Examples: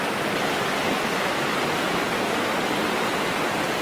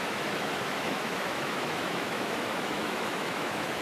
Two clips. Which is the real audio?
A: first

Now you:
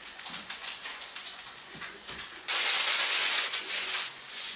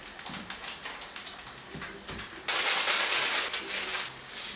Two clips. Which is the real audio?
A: second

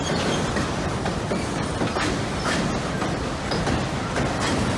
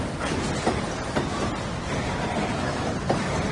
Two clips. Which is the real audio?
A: second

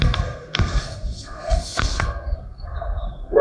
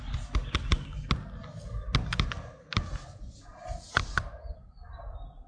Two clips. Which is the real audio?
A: second